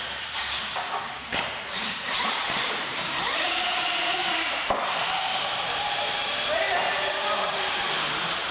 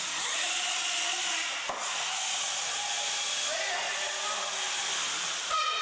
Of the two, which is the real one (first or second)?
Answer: second